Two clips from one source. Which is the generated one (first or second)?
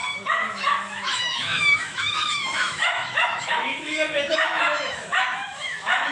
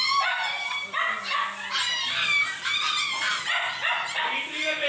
first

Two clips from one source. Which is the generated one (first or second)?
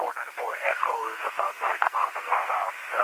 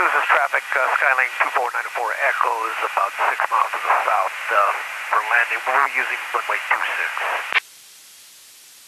first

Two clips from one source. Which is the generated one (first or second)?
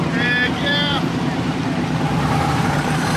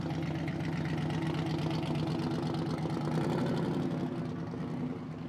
first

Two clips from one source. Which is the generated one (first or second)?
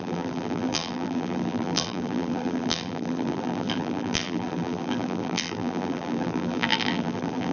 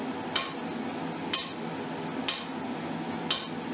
first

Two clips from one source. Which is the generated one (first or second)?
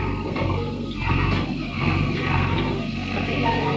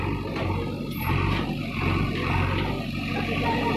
first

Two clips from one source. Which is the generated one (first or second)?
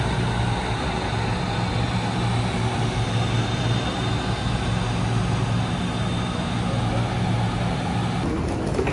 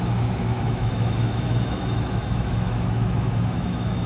second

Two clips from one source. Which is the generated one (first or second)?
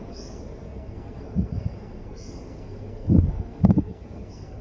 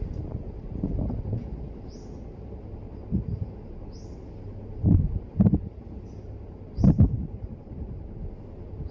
first